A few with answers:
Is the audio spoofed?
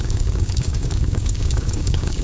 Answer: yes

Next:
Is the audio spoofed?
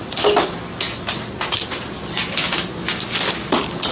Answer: no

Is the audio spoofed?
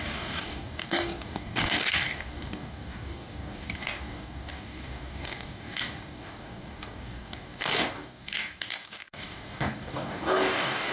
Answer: yes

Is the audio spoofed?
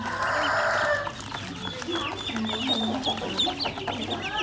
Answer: no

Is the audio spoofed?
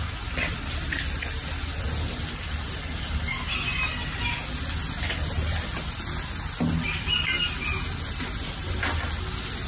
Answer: no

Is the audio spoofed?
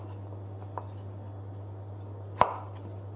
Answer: no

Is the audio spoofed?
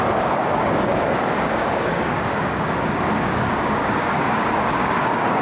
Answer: yes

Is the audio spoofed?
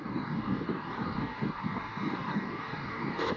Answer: yes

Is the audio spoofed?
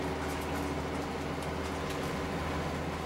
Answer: no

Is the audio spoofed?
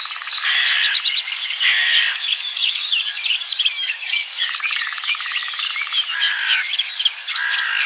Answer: yes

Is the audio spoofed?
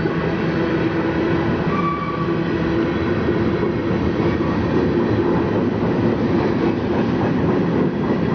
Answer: no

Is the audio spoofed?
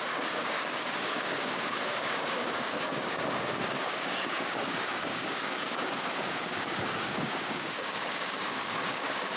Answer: yes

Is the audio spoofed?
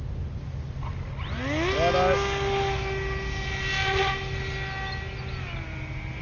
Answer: no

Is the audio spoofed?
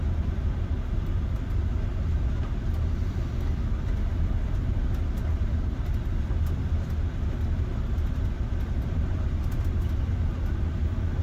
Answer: no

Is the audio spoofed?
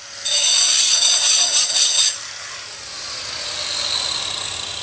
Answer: no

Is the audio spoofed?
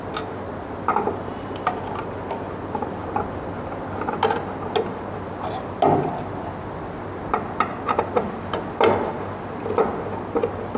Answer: no